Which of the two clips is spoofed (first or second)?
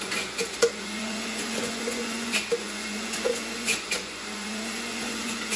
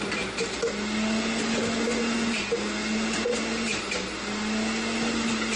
first